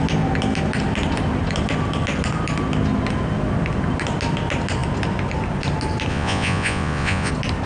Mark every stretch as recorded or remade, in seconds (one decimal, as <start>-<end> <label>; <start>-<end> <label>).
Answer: 0.0-6.1 recorded; 6.1-7.3 remade; 7.3-7.7 recorded